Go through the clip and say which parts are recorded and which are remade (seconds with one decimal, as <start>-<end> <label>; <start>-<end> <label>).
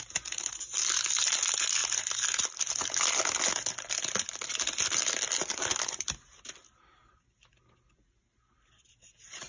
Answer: 0.0-9.5 recorded